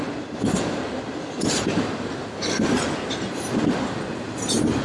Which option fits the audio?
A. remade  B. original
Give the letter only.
B